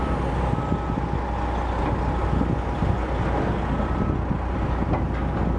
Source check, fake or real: real